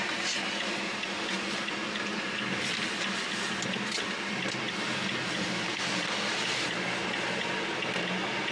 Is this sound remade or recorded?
recorded